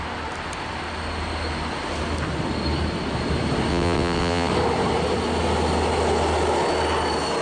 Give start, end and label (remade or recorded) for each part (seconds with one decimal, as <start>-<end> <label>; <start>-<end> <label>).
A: 0.0-3.7 recorded; 3.7-4.5 remade; 4.5-7.4 recorded